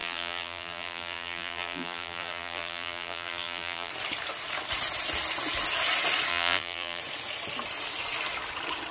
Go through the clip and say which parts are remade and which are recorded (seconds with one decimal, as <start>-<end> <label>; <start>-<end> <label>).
0.0-3.9 remade; 3.9-6.3 recorded; 6.3-7.0 remade; 7.0-8.9 recorded